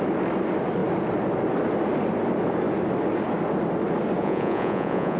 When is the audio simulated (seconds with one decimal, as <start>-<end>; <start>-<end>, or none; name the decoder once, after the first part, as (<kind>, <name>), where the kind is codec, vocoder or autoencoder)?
4.2-5.2 (vocoder, Vocos)